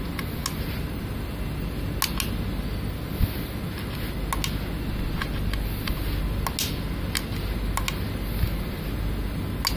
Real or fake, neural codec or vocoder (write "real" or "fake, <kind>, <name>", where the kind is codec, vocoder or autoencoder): real